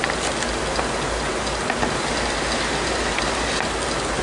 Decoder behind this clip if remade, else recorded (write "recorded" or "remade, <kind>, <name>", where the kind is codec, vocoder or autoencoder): recorded